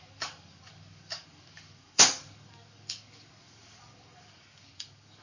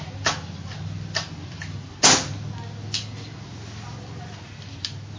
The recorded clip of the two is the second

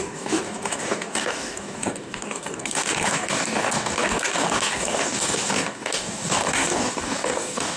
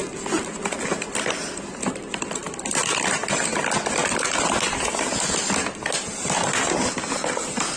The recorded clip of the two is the second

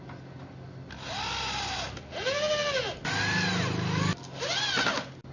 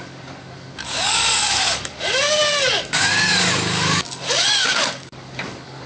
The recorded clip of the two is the first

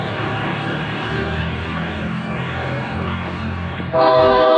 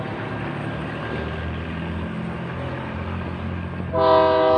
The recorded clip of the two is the second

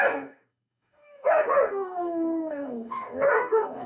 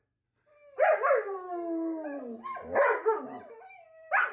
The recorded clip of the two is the second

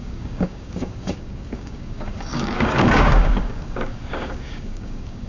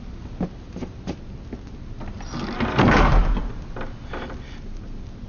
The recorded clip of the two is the second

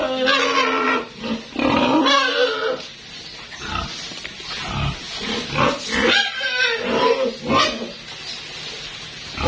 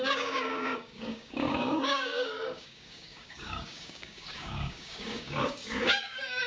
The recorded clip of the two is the first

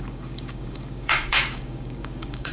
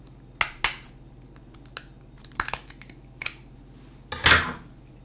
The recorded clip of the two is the second